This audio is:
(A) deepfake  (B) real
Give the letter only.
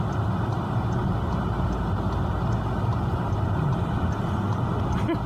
B